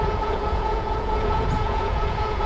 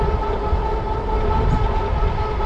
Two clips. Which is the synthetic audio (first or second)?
first